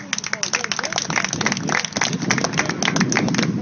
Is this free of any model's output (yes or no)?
yes